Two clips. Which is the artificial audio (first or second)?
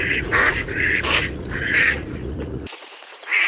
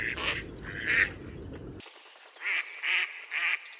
first